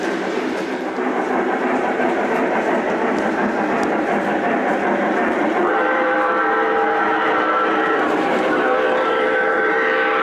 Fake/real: fake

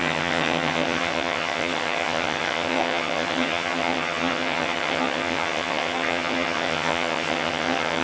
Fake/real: fake